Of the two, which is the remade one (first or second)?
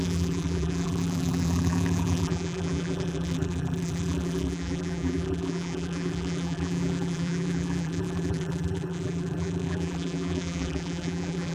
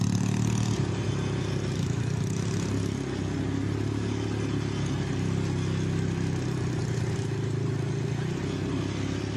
first